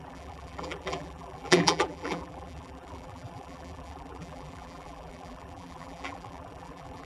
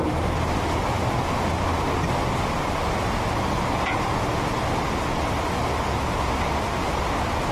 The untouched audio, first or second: second